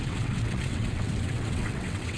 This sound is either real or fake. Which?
fake